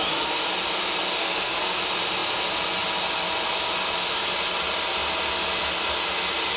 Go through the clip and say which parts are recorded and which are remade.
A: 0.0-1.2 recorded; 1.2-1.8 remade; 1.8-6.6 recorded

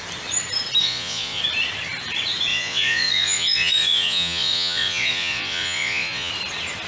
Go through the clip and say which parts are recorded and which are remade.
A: 0.0-0.8 recorded; 0.8-1.4 remade; 1.4-2.5 recorded; 2.5-6.3 remade; 6.3-6.9 recorded

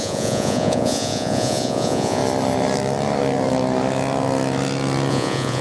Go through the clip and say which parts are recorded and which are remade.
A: 0.0-2.2 remade; 2.2-5.1 recorded; 5.1-5.6 remade

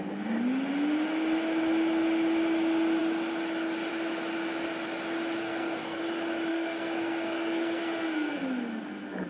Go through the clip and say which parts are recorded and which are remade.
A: 0.0-5.4 recorded; 5.4-6.0 remade; 6.0-6.5 recorded; 6.5-8.4 remade; 8.4-9.3 recorded